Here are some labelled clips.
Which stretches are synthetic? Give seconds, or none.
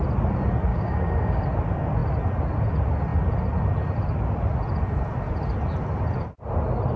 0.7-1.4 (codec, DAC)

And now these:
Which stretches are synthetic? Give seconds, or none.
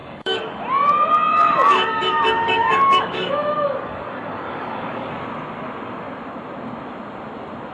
0.0-0.6 (codec, DAC); 1.3-5.1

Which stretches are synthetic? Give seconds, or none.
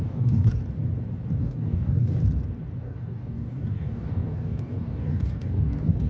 0.0-0.6 (codec, DAC); 1.4-2.2; 2.8-6.1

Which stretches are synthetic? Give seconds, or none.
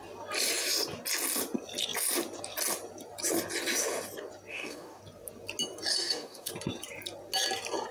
4.5-5.0 (codec, DAC); 5.9-6.5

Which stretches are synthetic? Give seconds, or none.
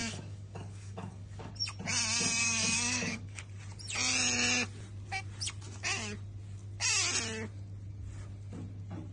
0.0-1.5 (codec, DAC); 2.4-3.4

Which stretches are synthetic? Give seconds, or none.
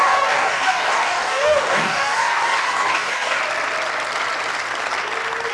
0.0-3.4 (codec, DAC)